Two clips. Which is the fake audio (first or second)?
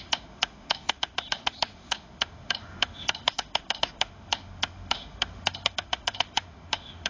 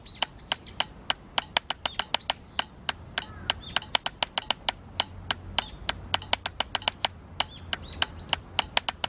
first